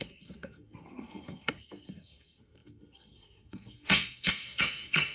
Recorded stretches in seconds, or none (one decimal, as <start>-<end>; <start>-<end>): none